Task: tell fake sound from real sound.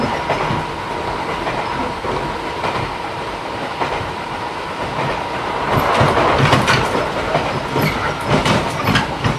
real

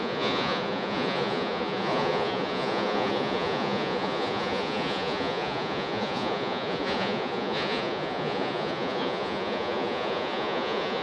fake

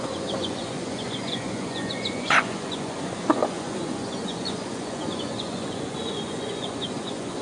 fake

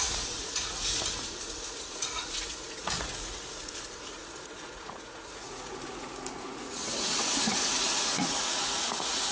fake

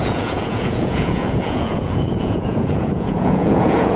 fake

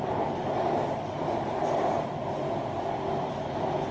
real